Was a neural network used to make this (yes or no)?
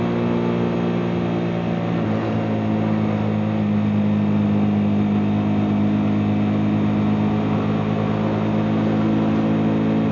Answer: no